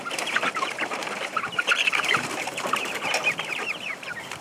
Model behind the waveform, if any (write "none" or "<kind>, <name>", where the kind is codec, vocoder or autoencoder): vocoder, BigVGAN v2